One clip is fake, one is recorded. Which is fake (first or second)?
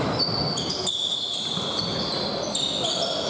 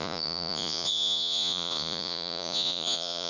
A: second